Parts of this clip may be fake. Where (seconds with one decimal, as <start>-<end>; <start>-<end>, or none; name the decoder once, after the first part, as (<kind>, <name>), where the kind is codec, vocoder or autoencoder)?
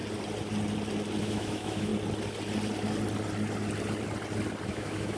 1.2-1.9 (autoencoder, DAC-VAE); 4.7-5.2